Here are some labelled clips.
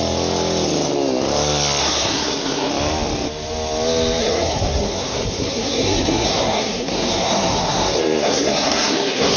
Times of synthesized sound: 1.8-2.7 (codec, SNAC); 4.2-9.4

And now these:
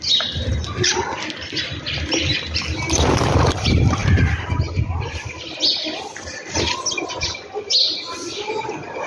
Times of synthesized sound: none

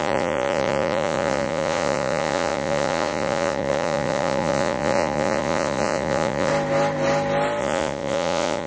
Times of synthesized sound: 0.0-6.5 (vocoder, Vocos); 7.6-8.7

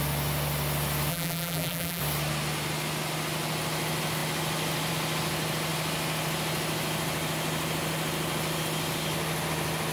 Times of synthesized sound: 1.1-2.0 (vocoder, BigVGAN v2)

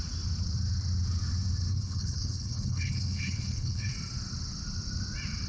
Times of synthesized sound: 1.7-3.9 (codec, HILCodec)

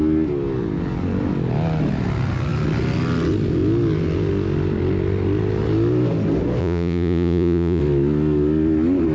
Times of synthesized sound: 6.6-7.8 (vocoder, Vocos)